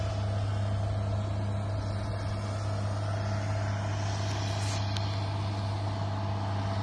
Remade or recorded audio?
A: recorded